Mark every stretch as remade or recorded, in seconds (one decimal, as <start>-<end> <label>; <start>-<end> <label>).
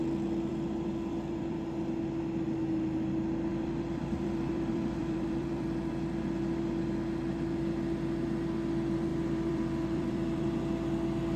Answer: 0.0-0.5 recorded; 0.5-1.6 remade; 1.6-3.5 recorded; 3.5-5.9 remade; 5.9-9.1 recorded; 9.1-10.5 remade; 10.5-11.4 recorded